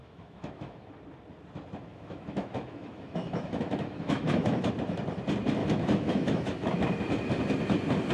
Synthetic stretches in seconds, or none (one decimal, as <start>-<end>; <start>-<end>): 0.0-0.9; 1.9-4.7; 5.6-6.8